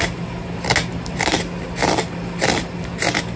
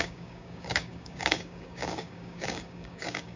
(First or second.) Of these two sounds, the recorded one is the first